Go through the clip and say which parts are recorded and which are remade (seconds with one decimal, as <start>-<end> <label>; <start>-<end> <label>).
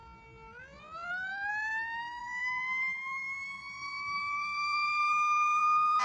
0.0-2.2 recorded; 2.2-6.0 remade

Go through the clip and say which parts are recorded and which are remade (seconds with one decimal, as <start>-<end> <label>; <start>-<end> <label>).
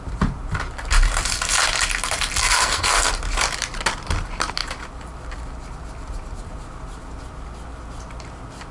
0.0-2.4 recorded; 2.4-3.1 remade; 3.1-8.7 recorded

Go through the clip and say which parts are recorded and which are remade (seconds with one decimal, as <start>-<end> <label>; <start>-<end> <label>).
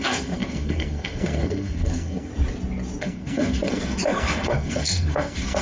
0.0-2.3 remade; 2.3-3.0 recorded; 3.0-5.6 remade